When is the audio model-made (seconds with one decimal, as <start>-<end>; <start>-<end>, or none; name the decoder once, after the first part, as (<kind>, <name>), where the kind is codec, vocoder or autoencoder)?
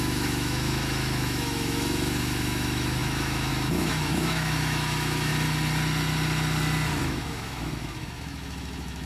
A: 0.0-5.3 (autoencoder, DAC-VAE); 7.0-9.1